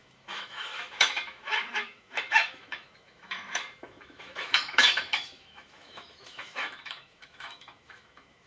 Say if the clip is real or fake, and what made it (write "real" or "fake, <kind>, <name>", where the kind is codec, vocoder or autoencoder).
fake, autoencoder, DAC-VAE